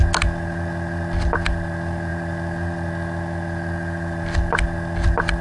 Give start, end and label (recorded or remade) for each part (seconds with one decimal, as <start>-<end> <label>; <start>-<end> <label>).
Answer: 0.0-5.4 recorded